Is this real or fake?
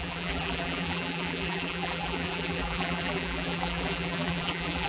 fake